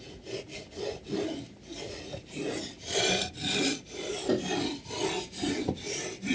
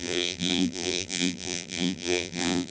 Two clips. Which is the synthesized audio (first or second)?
second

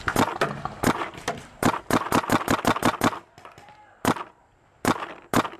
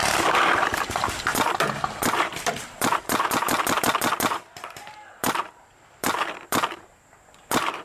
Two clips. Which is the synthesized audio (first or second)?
second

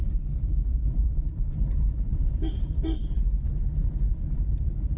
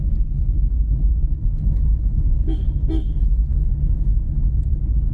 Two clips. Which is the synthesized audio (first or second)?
first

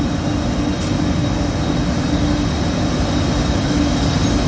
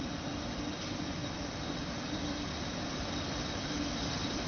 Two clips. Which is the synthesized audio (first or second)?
second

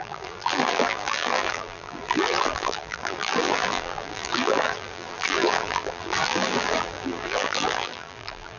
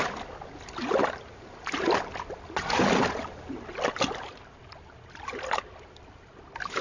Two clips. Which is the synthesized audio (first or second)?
first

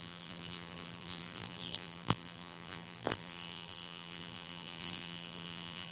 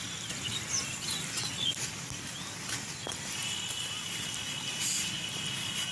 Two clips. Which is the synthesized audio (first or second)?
first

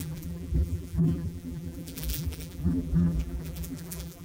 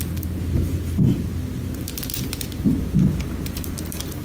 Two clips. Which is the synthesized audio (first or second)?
first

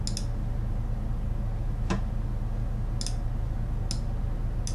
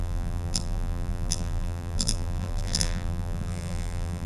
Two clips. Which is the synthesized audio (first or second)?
second